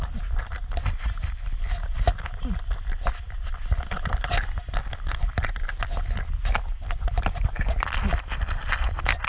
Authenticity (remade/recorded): recorded